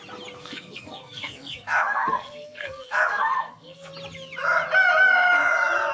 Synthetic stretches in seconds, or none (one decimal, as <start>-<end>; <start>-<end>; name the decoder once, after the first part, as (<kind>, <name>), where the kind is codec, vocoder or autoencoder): 0.4-3.9 (codec, SNAC)